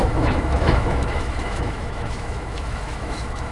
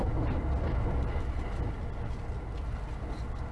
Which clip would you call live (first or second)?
second